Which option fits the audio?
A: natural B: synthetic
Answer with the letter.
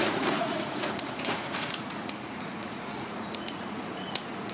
B